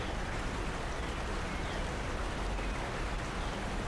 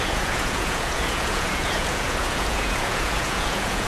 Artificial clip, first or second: second